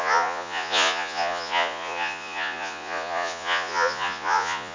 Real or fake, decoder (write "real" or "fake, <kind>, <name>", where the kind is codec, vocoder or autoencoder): fake, vocoder, Vocos